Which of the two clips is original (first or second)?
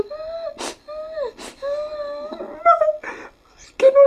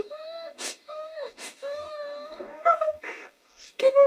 first